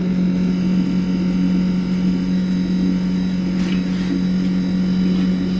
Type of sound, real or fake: real